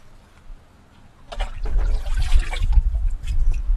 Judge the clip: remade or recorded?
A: recorded